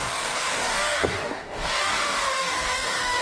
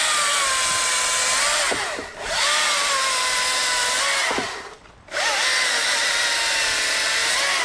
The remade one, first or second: first